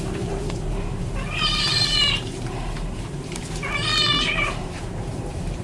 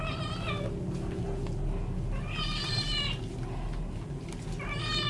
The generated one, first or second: first